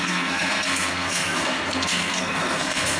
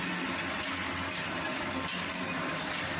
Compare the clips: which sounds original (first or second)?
second